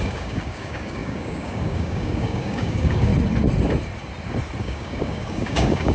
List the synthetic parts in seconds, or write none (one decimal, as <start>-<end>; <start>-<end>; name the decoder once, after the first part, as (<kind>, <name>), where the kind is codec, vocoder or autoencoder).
0.0-3.1 (codec, DAC); 4.6-5.9